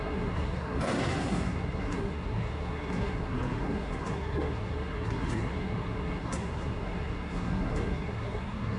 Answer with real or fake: fake